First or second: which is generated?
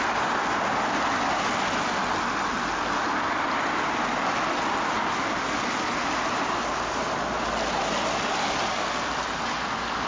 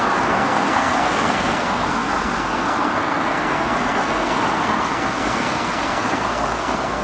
second